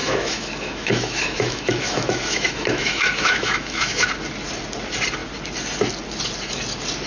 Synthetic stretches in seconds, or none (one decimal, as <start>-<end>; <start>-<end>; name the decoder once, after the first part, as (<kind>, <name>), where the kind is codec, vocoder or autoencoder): 0.0-4.1 (autoencoder, DAC-VAE)